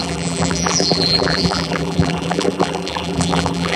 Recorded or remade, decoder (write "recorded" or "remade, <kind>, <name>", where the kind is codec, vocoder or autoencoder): remade, vocoder, BigVGAN v2